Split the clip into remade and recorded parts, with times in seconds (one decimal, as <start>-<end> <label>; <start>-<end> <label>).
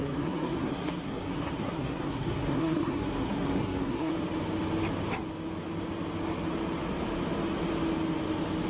0.0-4.1 remade; 4.1-8.7 recorded